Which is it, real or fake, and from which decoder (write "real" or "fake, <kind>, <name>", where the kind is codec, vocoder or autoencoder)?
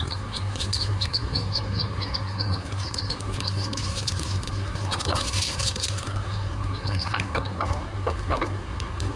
fake, codec, SNAC